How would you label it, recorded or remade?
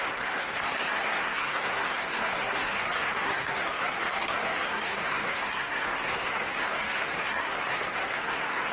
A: remade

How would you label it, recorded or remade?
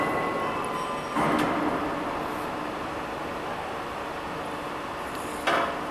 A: recorded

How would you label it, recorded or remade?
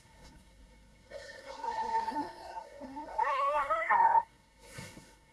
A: remade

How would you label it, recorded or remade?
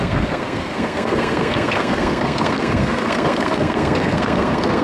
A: remade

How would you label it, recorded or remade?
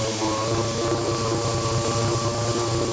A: recorded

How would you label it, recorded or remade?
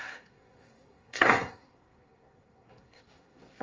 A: remade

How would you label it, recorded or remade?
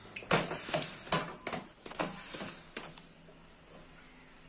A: recorded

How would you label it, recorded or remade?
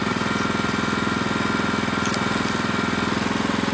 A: recorded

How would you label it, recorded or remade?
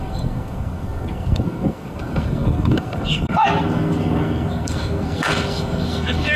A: remade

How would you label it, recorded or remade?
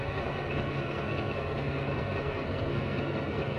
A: remade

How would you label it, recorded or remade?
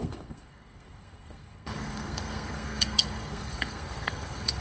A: remade